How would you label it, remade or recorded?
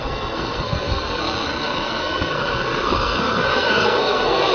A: remade